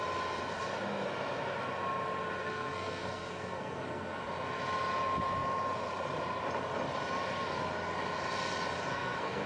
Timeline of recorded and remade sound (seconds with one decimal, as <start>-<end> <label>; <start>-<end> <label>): 0.0-2.4 recorded; 2.4-4.2 remade; 4.2-8.9 recorded; 8.9-9.5 remade